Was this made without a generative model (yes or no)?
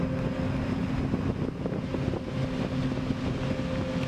yes